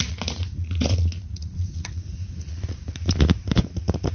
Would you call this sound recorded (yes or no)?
no